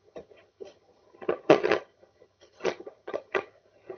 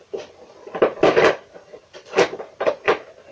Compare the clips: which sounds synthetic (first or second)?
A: first